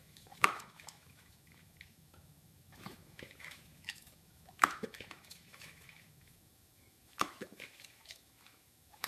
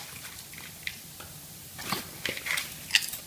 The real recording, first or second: second